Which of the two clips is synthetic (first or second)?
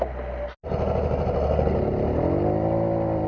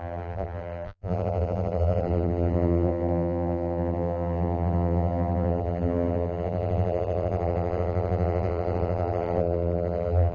second